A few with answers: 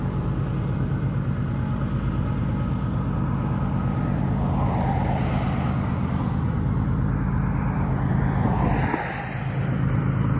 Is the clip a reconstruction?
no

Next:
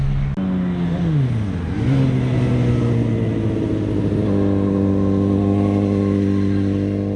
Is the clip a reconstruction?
no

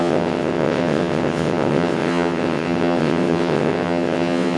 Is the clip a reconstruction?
yes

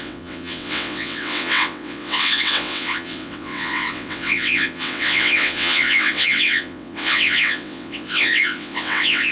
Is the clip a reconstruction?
yes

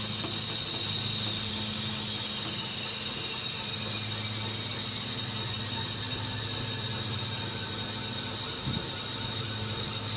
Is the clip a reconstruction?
no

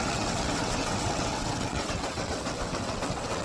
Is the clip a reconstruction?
yes